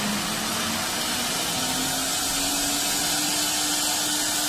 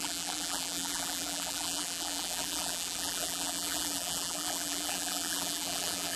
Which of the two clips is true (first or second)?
first